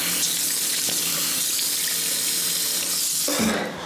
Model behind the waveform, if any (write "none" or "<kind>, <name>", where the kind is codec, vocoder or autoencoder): none